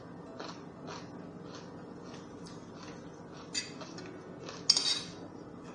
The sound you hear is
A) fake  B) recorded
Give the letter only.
B